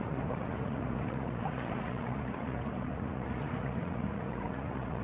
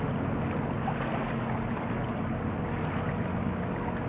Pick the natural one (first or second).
second